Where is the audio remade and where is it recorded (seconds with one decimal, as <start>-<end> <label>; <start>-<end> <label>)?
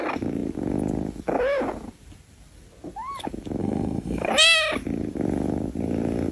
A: 0.0-3.6 recorded; 3.6-4.3 remade; 4.3-6.3 recorded